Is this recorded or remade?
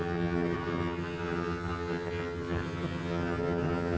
remade